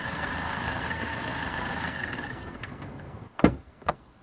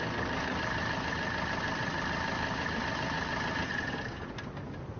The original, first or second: second